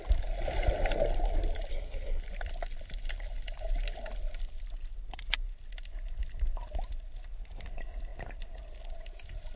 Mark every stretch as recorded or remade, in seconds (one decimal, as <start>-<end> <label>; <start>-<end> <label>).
0.0-1.7 recorded; 1.7-2.2 remade; 2.2-9.6 recorded

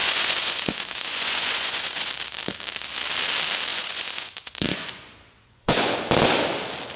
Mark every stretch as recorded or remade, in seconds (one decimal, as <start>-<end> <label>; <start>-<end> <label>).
0.0-2.1 remade; 2.1-3.7 recorded; 3.7-6.1 remade; 6.1-7.0 recorded

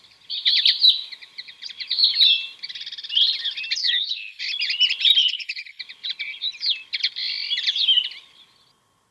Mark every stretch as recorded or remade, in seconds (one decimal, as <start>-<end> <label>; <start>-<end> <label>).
0.0-3.8 recorded; 3.8-4.4 remade; 4.4-5.2 recorded; 5.2-5.8 remade; 5.8-9.1 recorded

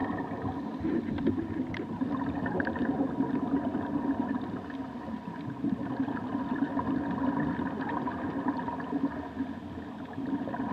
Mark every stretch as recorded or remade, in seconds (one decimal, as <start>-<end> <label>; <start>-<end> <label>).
0.0-10.7 recorded

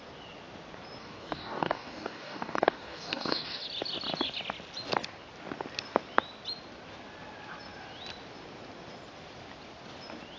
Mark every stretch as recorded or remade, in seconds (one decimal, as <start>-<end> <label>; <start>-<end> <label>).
0.0-1.0 recorded; 1.0-3.6 remade; 3.6-10.4 recorded

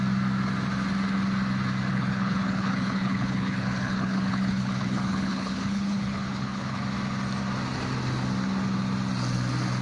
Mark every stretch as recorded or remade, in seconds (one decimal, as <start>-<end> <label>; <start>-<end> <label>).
0.0-1.9 recorded; 1.9-6.8 remade; 6.8-9.8 recorded